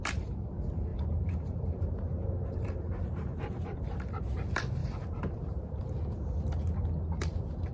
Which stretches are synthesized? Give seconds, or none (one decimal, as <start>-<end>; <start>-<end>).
0.9-4.0; 4.8-5.8

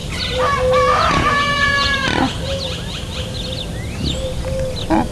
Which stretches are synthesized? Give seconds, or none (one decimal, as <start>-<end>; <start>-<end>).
1.1-2.0

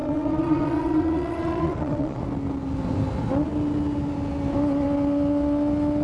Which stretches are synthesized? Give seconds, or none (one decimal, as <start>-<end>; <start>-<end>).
0.0-2.2

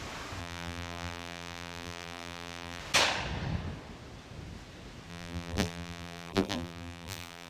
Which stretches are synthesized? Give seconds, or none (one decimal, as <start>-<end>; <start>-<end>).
0.4-2.8; 5.1-7.5

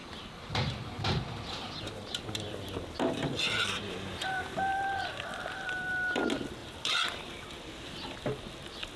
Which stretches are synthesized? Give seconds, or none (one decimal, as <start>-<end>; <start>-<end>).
0.0-4.3; 4.7-5.9; 6.6-7.4